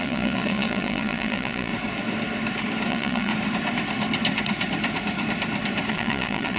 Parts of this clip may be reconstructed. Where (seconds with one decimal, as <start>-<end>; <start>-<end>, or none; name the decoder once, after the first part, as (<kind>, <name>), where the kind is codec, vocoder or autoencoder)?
0.0-1.7 (vocoder, Vocos); 2.9-3.3; 5.9-6.6